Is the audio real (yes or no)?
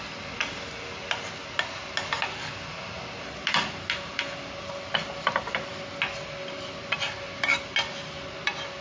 yes